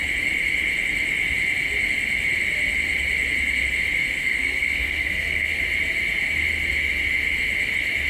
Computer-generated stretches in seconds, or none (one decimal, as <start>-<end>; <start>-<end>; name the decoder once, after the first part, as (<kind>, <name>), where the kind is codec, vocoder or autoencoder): 4.2-5.6 (codec, SNAC)